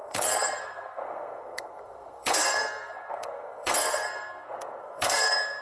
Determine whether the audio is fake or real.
fake